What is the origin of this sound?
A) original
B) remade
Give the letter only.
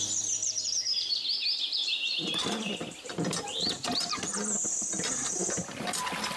B